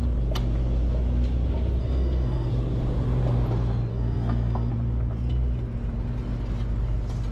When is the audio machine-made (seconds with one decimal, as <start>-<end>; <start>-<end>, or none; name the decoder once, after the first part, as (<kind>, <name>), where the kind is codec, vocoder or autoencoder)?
1.8-2.5 (codec, SNAC); 3.9-4.7